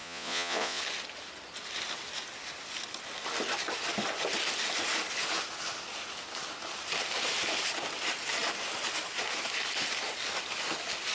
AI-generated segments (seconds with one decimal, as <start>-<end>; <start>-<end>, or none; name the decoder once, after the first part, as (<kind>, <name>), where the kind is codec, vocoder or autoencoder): 0.0-0.8 (vocoder, Vocos)